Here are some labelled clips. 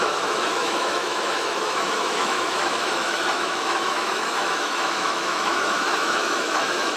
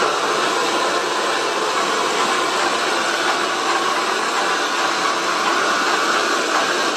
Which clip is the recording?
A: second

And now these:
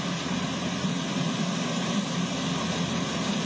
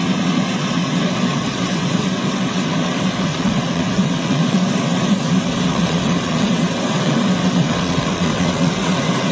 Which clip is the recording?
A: first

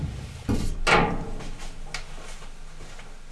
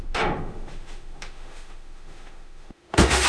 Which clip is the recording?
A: first